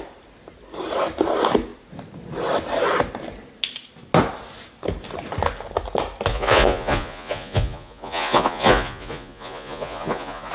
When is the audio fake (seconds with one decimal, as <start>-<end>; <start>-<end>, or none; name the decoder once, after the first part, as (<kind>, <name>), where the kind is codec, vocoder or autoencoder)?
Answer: 6.3-10.5 (vocoder, Vocos)